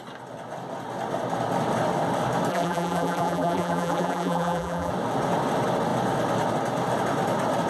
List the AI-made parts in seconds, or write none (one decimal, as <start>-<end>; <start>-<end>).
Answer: 2.5-4.9